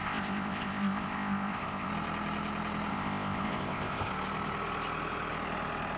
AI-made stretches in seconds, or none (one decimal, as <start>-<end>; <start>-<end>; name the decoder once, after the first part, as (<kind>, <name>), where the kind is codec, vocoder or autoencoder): 0.0-1.9 (codec, ZipCodec); 2.9-4.1